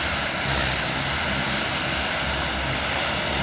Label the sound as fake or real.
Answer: real